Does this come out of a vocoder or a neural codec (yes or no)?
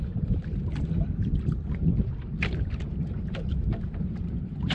no